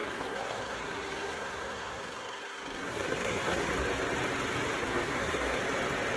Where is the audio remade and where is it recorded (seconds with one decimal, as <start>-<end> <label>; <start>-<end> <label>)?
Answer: 0.0-3.7 remade; 3.7-4.8 recorded; 4.8-5.6 remade; 5.6-6.2 recorded